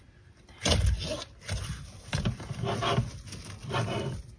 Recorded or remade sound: recorded